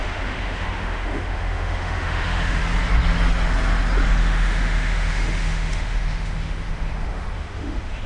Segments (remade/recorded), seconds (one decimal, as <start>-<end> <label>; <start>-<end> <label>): 0.0-2.6 remade; 2.6-4.2 recorded; 4.2-8.1 remade